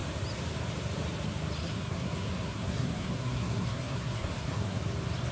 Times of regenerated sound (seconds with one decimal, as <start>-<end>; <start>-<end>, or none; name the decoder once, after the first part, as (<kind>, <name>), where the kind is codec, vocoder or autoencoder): 1.6-4.8 (codec, SNAC)